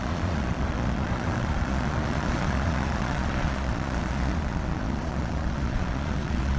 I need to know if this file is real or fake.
fake